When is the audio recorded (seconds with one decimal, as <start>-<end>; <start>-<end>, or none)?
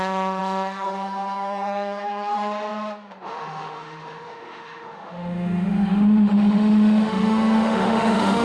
none